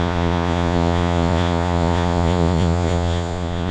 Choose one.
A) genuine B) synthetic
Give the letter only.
B